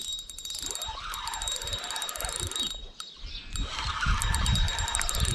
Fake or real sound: real